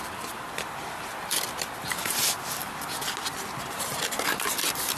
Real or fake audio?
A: real